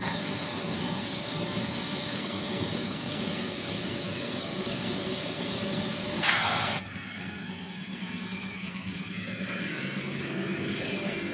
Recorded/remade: remade